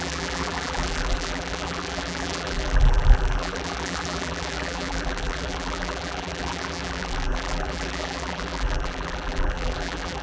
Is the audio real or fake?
fake